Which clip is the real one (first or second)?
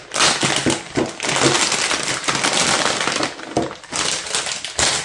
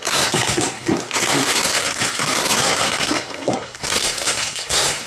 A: first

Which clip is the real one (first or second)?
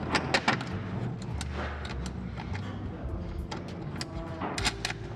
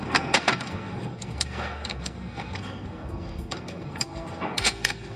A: first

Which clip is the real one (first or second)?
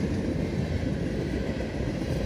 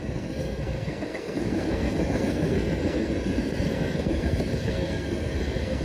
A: first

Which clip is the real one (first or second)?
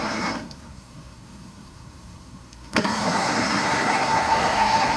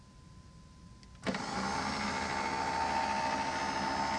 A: second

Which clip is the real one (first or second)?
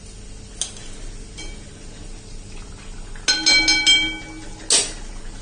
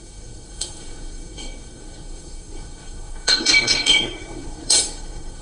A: first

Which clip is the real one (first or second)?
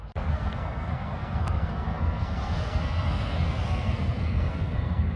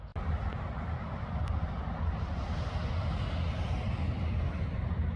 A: second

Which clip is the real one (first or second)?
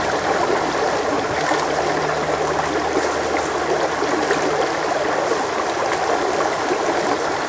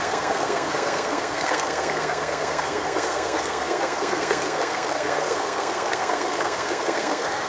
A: first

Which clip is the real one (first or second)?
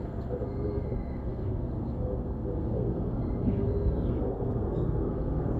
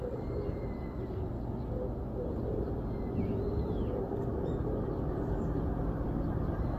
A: second